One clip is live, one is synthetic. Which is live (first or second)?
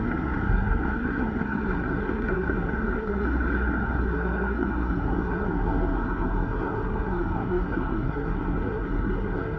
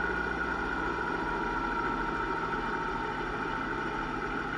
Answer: second